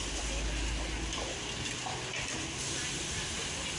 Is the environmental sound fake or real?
real